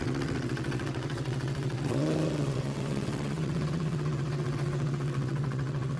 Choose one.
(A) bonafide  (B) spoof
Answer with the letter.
B